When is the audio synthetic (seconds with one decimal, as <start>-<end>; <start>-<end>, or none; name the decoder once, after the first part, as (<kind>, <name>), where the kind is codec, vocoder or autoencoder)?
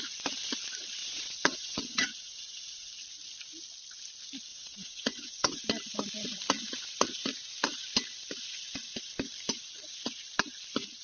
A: 1.0-2.9 (vocoder, WaveNeXt); 4.5-5.6